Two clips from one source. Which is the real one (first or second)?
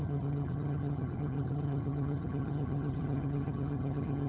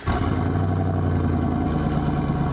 second